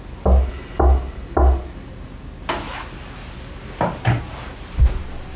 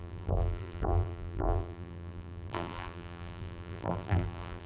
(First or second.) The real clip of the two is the first